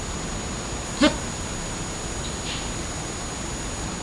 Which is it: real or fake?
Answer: real